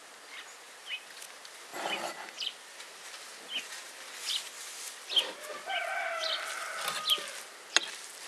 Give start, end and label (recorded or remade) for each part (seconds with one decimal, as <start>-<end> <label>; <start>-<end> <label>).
0.0-8.3 recorded